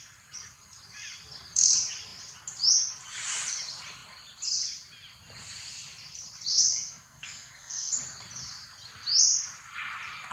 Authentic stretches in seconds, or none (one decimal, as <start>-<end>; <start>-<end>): 0.0-6.5; 7.9-10.3